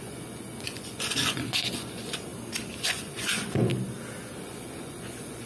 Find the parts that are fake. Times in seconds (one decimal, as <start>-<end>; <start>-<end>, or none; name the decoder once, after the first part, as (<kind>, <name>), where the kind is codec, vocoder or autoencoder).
0.0-2.3 (vocoder, Vocos); 2.8-3.7; 4.4-5.5